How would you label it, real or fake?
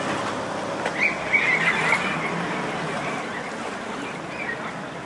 real